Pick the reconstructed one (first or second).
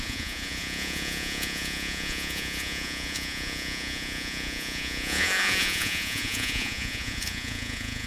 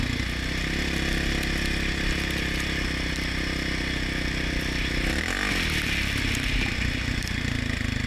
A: first